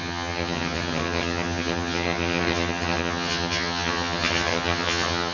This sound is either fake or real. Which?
fake